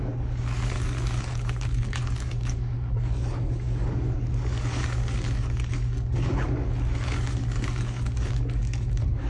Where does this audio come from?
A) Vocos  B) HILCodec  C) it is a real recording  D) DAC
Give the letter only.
D